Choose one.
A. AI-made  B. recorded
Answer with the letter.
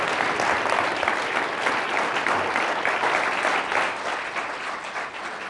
B